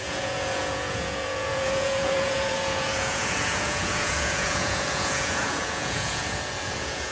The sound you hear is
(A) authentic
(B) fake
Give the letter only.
B